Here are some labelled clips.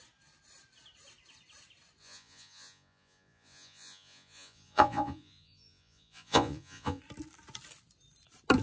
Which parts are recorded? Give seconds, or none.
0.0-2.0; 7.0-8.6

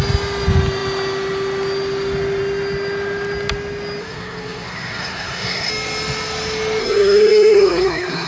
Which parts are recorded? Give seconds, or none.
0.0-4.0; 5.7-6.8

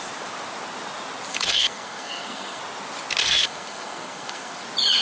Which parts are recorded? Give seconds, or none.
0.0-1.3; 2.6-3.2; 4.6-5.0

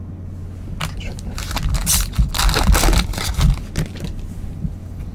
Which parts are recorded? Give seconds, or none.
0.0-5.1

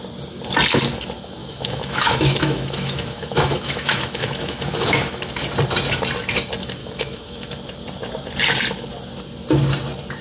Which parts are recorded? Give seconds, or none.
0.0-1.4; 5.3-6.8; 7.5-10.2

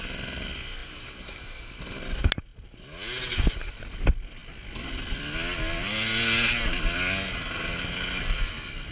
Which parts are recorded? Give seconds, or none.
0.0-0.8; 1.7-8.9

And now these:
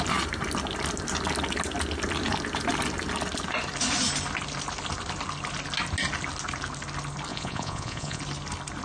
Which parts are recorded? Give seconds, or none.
0.0-7.3; 8.2-8.8

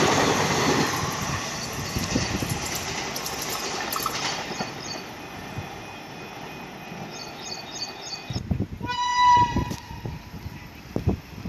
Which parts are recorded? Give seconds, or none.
0.0-9.1; 10.4-11.5